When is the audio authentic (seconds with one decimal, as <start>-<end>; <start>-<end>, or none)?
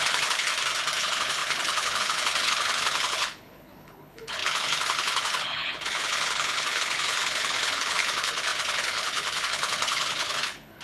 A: 0.5-1.0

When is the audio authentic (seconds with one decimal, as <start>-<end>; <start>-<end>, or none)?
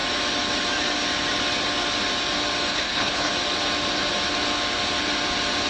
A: 0.0-2.7; 3.3-5.7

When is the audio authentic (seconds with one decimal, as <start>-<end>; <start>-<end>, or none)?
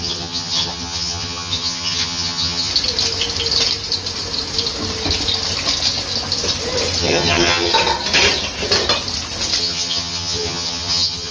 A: 2.7-7.0; 7.7-9.6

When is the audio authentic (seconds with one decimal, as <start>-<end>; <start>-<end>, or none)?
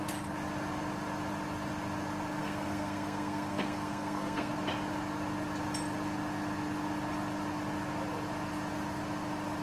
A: 0.0-2.4; 4.5-9.6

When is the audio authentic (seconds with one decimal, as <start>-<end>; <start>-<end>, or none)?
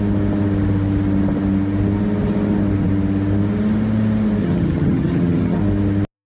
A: 0.0-4.4; 5.6-6.3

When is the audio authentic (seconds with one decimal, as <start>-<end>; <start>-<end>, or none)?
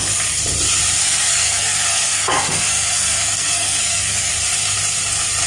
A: 0.0-1.0; 4.3-5.5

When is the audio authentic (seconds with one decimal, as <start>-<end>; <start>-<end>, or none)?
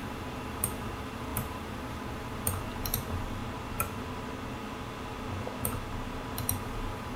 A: 3.4-6.6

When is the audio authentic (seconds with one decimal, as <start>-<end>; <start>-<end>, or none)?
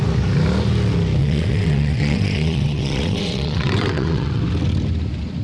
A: 0.0-1.2; 4.4-5.4